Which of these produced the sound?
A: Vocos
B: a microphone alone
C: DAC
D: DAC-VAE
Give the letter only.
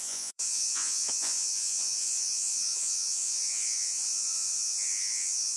A